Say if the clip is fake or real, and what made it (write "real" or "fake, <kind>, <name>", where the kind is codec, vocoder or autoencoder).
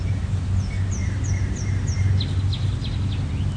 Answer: real